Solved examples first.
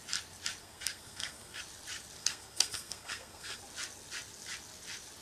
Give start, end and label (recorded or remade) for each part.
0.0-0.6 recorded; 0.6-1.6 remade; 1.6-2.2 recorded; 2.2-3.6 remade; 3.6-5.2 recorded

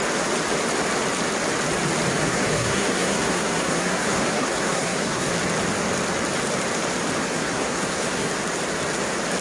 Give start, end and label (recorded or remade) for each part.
0.0-2.2 recorded; 2.2-5.3 remade; 5.3-7.2 recorded; 7.2-8.3 remade; 8.3-9.4 recorded

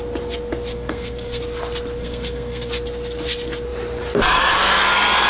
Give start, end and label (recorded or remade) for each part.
0.0-0.7 recorded; 0.7-1.4 remade; 1.4-2.0 recorded; 2.0-2.7 remade; 2.7-5.3 recorded

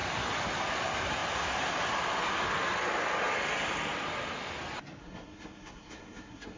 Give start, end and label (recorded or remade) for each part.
0.0-5.0 recorded; 5.0-6.6 remade

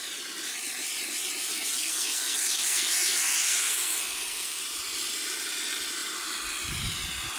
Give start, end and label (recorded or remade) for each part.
0.0-1.4 recorded; 1.4-4.6 remade; 4.6-7.4 recorded

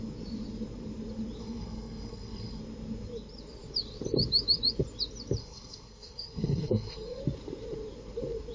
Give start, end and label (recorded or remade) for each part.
0.0-1.4 recorded; 1.4-2.6 remade; 2.6-5.4 recorded; 5.4-7.2 remade; 7.2-8.5 recorded

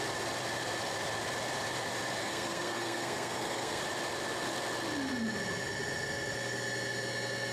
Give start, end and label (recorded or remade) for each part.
0.0-2.2 recorded; 2.2-3.8 remade; 3.8-7.5 recorded